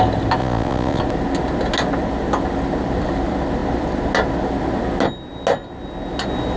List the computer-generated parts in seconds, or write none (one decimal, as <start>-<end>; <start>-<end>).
0.4-1.0